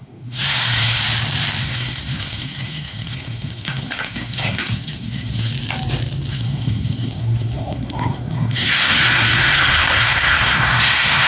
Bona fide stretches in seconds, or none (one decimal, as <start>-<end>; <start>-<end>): 1.0-1.6; 5.5-6.3